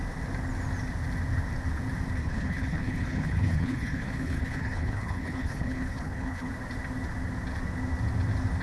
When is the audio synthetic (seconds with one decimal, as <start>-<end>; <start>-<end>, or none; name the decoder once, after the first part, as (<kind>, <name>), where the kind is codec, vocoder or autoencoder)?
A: 2.2-6.5 (codec, HILCodec)